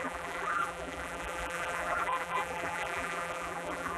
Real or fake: fake